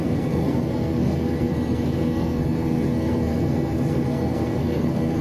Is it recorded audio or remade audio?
remade